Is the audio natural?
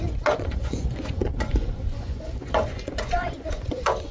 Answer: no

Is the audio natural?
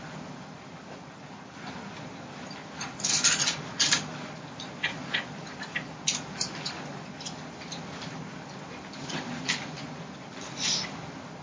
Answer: yes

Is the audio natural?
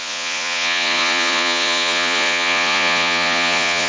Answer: no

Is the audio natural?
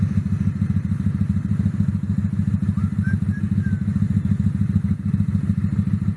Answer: yes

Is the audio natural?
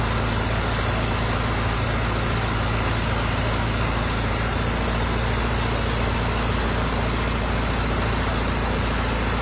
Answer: yes